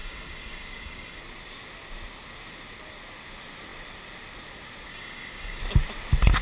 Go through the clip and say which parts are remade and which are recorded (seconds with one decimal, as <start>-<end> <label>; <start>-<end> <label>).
0.0-1.2 remade; 1.2-4.9 recorded; 4.9-5.6 remade; 5.6-6.4 recorded